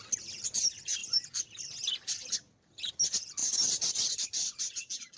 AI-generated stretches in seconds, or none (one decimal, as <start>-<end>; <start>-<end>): none

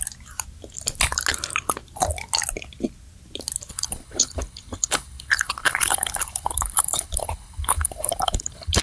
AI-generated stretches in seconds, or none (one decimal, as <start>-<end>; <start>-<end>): 3.7-8.8

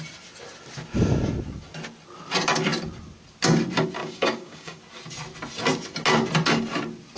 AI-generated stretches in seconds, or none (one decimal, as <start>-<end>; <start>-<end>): 4.0-4.8

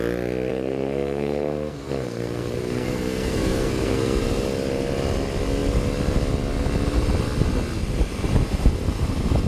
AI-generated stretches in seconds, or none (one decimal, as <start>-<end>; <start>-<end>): 0.5-4.2

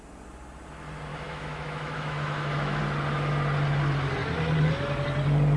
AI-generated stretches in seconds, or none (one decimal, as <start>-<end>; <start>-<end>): 1.1-2.8

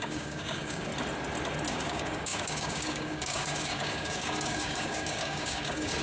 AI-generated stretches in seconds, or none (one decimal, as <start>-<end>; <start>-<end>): 0.0-0.9; 1.7-6.0